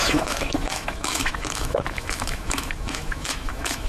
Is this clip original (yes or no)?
no